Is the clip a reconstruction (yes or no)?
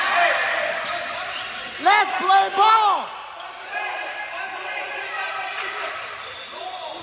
no